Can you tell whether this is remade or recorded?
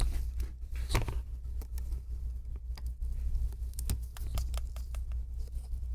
recorded